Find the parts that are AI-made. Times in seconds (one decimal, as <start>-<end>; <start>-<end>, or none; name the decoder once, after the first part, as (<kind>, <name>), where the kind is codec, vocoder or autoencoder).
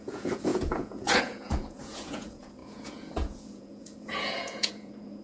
0.0-5.2 (vocoder, Vocos)